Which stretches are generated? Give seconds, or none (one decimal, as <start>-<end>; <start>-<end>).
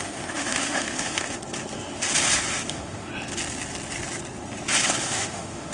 0.0-1.4; 2.7-3.1; 5.0-5.7